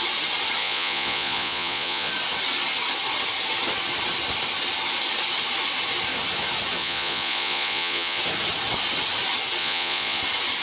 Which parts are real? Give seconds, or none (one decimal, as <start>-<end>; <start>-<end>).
0.0-0.6; 2.1-6.8; 8.2-9.6; 10.2-10.6